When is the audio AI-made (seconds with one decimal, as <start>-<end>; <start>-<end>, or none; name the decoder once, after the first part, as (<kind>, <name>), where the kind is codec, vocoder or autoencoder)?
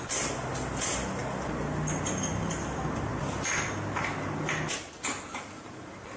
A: none